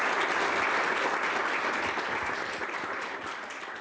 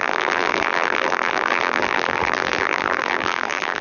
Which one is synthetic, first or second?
second